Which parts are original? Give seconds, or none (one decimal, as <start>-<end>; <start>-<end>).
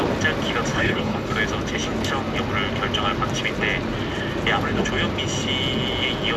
0.0-0.7; 1.3-6.4